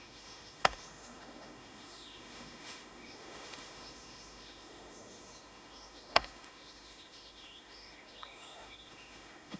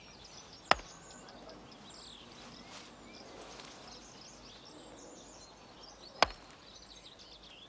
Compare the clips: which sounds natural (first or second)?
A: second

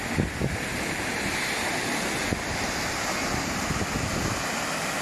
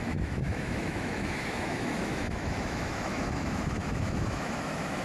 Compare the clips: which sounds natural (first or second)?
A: first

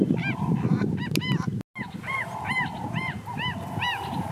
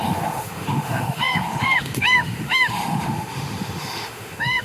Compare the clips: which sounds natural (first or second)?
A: first